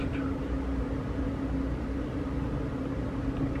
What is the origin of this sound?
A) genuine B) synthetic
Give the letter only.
B